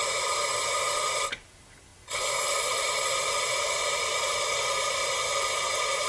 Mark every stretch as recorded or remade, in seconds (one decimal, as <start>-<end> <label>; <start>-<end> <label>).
0.0-6.1 recorded